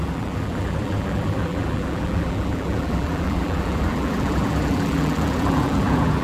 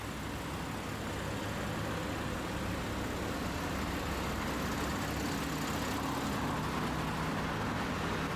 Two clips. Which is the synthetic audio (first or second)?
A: first